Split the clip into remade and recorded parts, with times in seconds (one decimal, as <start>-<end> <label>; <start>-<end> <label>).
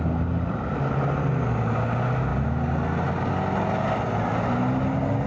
0.0-5.3 recorded